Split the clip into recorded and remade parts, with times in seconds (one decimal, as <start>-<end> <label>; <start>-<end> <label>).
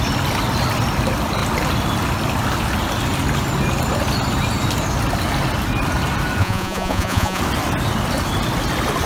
0.0-6.4 recorded; 6.4-7.4 remade; 7.4-9.1 recorded